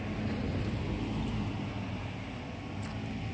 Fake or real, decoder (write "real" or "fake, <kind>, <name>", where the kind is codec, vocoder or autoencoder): real